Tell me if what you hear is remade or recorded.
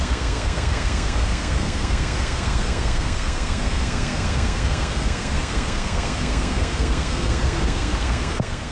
remade